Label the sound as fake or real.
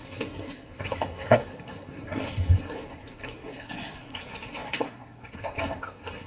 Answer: fake